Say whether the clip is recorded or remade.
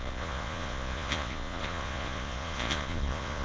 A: remade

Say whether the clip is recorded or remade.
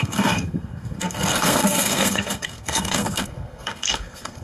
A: remade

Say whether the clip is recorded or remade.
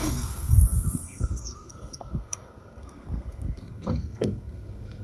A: remade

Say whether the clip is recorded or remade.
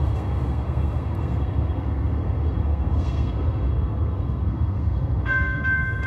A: remade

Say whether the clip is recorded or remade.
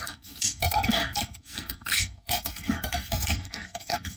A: remade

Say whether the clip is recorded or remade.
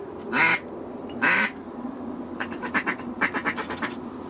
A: recorded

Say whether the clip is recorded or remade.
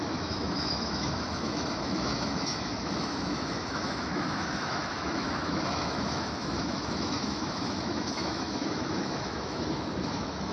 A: remade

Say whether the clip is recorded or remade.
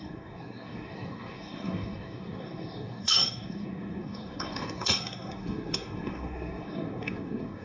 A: remade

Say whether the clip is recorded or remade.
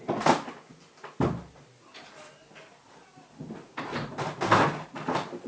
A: recorded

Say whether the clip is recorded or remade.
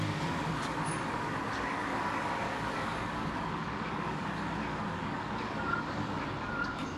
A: remade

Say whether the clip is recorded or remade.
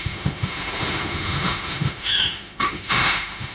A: remade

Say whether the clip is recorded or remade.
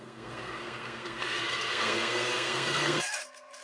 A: remade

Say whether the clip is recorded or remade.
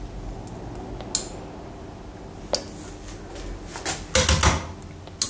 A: recorded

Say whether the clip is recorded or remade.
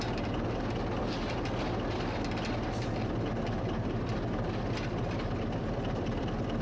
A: recorded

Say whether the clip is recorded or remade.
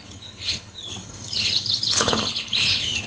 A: remade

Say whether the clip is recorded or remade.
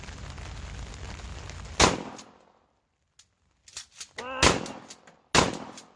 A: recorded